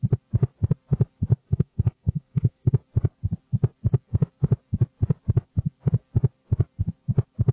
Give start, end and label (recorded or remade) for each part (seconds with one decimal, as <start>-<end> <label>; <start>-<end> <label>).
0.0-1.3 recorded; 1.3-2.7 remade; 2.7-7.5 recorded